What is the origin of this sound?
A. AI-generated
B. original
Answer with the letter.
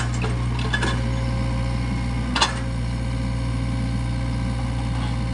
B